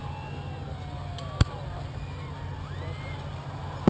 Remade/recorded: recorded